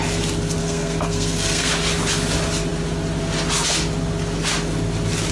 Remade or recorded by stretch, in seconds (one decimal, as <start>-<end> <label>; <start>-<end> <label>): 0.0-0.6 recorded; 0.6-1.7 remade; 1.7-5.3 recorded